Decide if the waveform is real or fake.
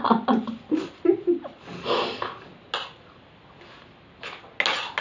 real